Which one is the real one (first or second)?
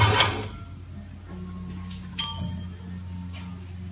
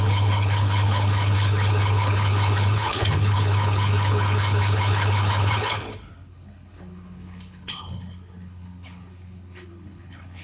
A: first